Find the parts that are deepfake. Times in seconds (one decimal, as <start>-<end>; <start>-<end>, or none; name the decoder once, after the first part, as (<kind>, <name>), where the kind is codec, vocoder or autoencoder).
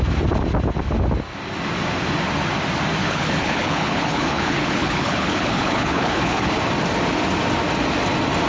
3.0-6.6 (codec, HILCodec)